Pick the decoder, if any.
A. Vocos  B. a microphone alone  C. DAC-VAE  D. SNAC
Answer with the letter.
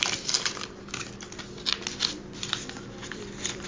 B